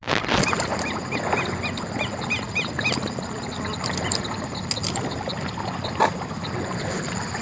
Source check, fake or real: real